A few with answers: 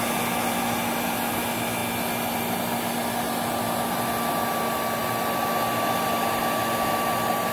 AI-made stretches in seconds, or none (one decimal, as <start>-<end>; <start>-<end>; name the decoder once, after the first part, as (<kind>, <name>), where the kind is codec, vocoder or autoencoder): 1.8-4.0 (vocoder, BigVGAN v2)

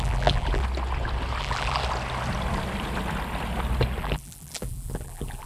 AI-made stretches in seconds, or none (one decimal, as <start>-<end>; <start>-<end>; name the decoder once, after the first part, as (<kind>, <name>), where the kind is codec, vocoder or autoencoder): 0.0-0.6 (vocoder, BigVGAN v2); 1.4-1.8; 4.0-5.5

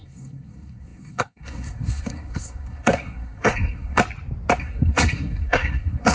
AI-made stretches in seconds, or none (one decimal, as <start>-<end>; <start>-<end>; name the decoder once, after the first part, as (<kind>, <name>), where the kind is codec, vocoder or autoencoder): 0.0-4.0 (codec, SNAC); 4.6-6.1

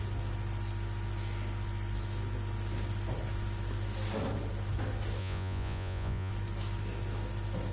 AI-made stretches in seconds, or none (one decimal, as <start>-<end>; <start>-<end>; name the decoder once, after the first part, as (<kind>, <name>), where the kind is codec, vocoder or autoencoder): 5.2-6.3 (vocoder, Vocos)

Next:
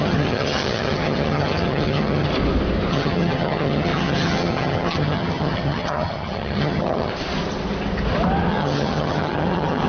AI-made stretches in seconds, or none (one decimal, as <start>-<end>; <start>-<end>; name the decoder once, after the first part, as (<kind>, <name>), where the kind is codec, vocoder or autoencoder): 0.0-2.3 (vocoder, HiFi-GAN); 2.9-7.1; 8.5-9.9

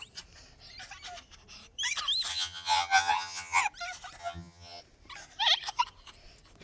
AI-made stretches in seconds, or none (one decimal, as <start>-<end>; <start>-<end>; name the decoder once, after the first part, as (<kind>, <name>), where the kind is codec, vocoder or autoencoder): 2.3-3.6 (vocoder, HiFi-GAN); 4.2-4.8